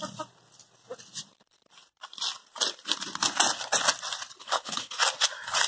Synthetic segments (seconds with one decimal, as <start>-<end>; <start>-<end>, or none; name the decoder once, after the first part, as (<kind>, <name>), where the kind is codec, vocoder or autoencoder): 4.4-4.9 (codec, HILCodec)